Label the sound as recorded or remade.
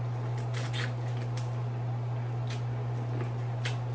recorded